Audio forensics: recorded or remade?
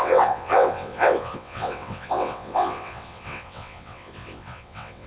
remade